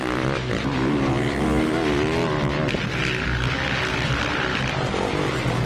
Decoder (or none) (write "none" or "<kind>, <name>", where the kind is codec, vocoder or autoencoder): none